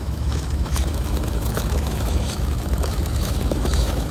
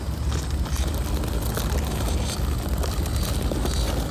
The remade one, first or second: first